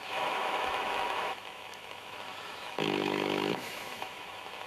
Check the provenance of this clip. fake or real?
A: fake